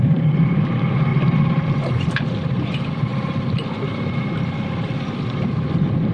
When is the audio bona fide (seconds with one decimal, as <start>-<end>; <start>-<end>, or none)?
1.1-1.8; 3.1-4.5